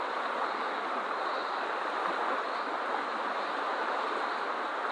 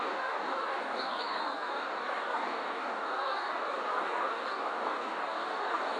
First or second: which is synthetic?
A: second